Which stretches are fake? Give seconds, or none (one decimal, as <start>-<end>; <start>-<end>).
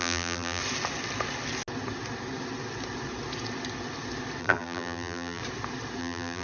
0.0-0.6; 4.4-5.4; 6.0-6.4